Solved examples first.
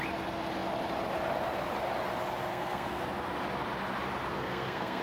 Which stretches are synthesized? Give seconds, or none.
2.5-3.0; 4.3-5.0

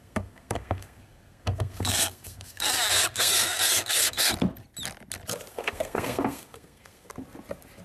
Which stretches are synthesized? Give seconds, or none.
0.0-4.3; 5.5-7.1

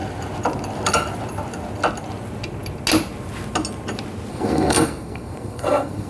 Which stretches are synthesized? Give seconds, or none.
4.3-6.1

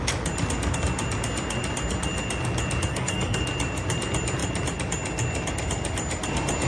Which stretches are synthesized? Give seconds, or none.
2.9-3.4

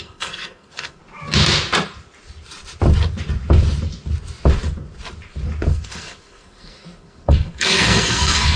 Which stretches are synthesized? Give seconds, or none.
0.0-1.0; 5.7-8.6

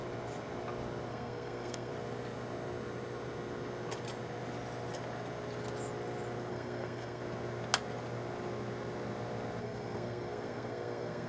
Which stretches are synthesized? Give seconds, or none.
1.1-1.9; 6.5-7.2; 9.6-11.3

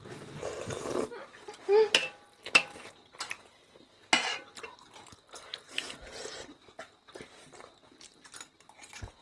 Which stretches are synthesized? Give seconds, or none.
none